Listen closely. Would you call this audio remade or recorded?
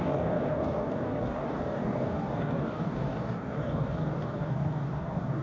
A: remade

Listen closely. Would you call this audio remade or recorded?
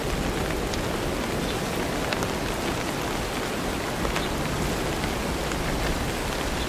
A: recorded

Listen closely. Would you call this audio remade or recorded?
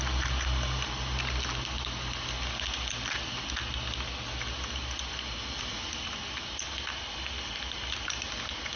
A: recorded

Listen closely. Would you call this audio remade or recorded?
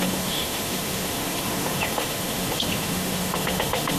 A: remade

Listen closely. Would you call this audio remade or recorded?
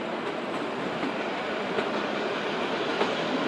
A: recorded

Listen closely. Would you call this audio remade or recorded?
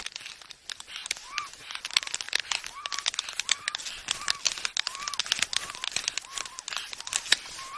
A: recorded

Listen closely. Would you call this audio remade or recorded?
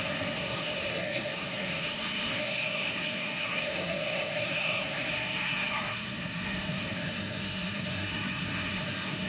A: remade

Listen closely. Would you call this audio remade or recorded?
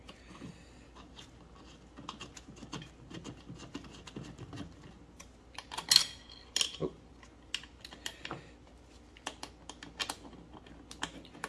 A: recorded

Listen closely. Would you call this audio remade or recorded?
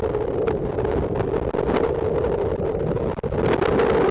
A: recorded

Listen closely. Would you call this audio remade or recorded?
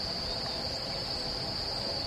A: recorded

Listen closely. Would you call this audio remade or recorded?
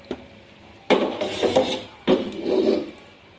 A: recorded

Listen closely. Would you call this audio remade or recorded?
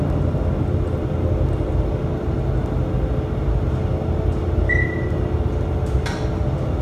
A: recorded